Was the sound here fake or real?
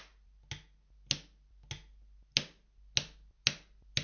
real